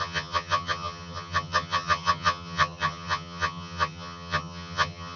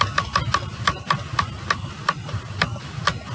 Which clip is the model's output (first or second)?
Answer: first